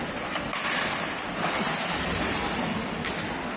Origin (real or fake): real